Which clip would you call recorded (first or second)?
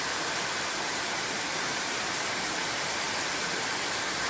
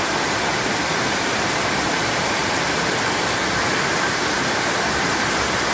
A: first